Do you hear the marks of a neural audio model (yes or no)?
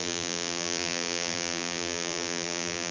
yes